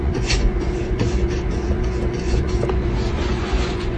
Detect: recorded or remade remade